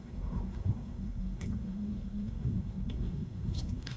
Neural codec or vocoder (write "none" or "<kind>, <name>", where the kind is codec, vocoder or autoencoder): codec, SNAC